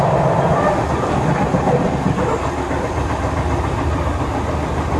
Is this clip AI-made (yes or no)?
no